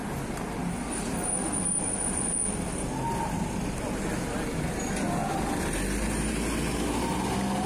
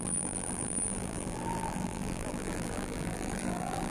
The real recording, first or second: first